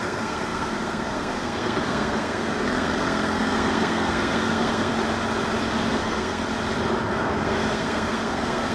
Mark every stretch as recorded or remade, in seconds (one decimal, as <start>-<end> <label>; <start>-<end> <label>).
0.0-4.9 remade; 4.9-5.9 recorded; 5.9-6.4 remade; 6.4-7.1 recorded; 7.1-8.7 remade